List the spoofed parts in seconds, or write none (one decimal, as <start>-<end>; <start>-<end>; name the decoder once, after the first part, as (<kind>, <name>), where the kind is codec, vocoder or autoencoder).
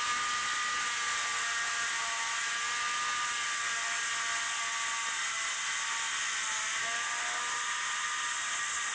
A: none